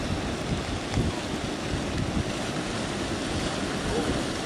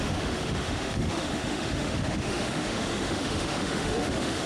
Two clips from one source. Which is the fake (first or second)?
second